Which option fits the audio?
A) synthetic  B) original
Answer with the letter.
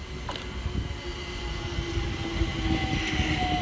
B